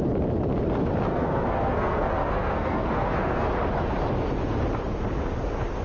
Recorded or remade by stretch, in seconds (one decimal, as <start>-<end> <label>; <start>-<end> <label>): 0.0-1.1 recorded; 1.1-3.5 remade; 3.5-5.8 recorded